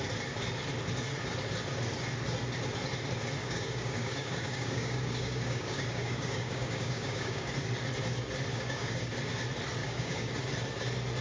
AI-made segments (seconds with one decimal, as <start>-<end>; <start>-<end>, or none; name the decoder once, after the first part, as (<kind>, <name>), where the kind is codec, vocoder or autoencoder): 3.4-7.5 (codec, DAC); 8.5-9.1; 9.8-10.3